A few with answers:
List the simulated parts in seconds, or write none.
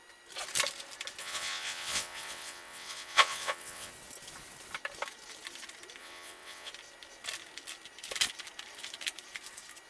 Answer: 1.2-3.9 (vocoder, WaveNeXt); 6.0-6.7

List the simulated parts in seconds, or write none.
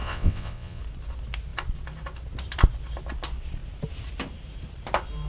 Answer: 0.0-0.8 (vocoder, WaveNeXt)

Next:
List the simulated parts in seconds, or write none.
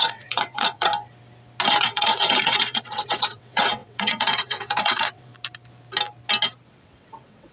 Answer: 0.0-0.9 (vocoder, WaveNeXt); 1.8-5.3; 6.7-7.5